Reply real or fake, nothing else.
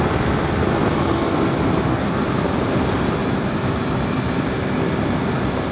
real